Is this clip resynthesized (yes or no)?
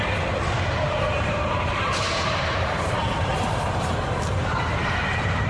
yes